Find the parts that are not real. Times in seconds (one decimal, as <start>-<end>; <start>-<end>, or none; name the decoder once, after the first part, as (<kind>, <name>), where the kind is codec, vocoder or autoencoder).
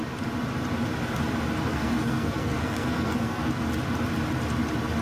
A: 1.7-3.5 (codec, SNAC)